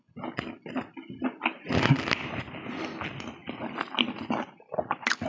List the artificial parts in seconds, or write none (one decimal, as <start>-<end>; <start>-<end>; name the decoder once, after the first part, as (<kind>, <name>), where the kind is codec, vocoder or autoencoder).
none